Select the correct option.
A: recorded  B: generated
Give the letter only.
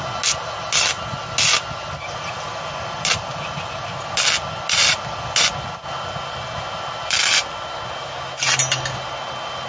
A